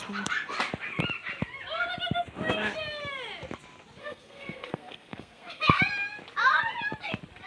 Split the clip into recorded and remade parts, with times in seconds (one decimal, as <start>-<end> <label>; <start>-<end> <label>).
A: 0.0-4.0 recorded; 4.0-5.8 remade; 5.8-7.5 recorded